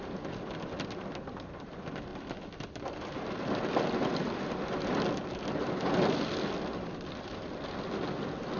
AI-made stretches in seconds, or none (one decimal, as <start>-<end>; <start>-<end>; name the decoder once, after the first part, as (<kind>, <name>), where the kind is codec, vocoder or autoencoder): none